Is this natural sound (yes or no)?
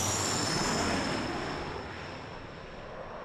yes